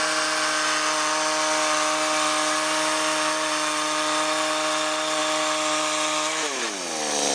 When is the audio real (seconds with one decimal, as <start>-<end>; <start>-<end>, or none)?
0.0-7.3